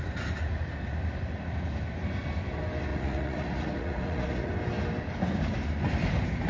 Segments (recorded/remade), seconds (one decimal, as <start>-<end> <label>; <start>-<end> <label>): 0.0-2.9 recorded; 2.9-4.5 remade; 4.5-6.5 recorded